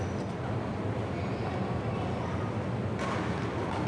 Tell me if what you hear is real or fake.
real